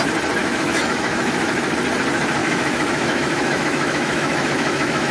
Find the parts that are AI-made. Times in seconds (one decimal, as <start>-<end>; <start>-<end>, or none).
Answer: 0.4-1.7; 2.4-5.1